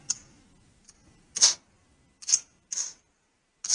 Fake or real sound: real